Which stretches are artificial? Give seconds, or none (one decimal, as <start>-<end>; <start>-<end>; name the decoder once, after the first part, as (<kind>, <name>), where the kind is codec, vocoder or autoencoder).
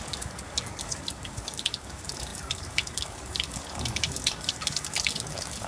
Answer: 0.0-5.7 (codec, DAC)